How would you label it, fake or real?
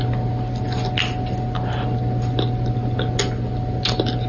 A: real